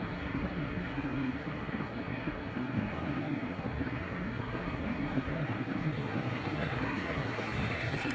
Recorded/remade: remade